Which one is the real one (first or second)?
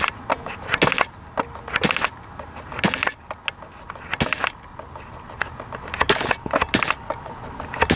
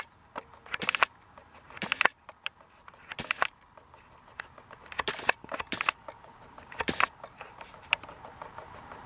first